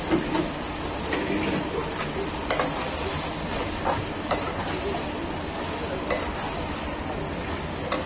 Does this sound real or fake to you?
real